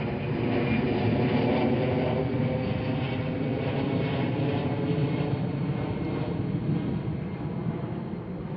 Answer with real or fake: real